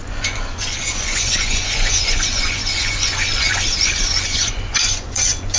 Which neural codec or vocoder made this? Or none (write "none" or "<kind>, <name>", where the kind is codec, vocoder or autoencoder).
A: vocoder, Vocos